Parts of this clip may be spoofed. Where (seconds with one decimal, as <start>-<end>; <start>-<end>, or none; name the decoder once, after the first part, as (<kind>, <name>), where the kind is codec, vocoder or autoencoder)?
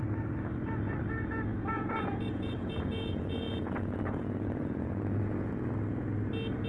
1.5-5.5 (vocoder, Vocos)